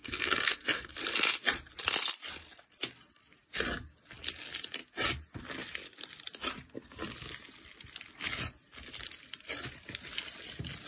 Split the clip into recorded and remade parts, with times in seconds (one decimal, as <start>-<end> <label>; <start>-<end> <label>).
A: 0.0-0.9 remade; 0.9-10.9 recorded